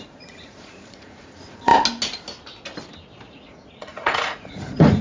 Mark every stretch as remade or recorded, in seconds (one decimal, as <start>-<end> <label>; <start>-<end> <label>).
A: 0.0-1.7 remade; 1.7-3.3 recorded; 3.3-5.0 remade